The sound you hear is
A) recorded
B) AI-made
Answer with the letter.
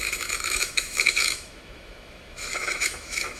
B